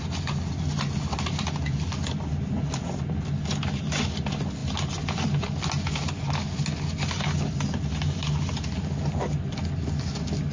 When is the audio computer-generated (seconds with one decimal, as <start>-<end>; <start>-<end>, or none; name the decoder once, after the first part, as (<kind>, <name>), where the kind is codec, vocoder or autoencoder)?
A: none